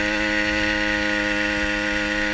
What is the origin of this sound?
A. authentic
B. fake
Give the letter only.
A